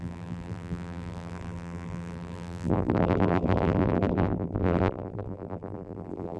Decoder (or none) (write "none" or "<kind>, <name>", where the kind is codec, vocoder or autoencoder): vocoder, BigVGAN v2